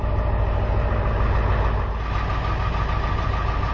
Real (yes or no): yes